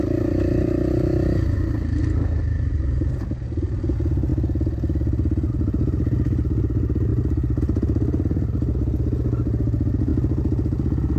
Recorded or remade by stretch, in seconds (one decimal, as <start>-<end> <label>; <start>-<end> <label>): 0.0-11.2 recorded